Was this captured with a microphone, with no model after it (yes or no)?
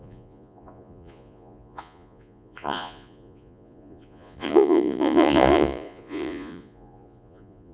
no